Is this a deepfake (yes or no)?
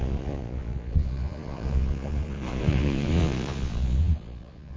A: yes